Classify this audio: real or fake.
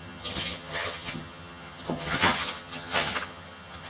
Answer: fake